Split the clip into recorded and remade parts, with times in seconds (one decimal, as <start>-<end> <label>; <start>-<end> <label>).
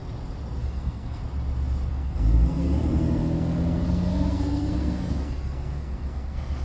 0.0-0.6 recorded; 0.6-1.2 remade; 1.2-1.9 recorded; 1.9-6.6 remade